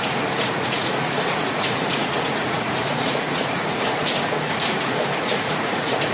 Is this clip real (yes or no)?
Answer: no